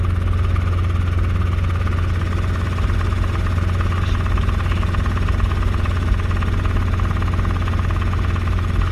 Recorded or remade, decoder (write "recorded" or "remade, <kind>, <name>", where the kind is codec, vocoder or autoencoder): recorded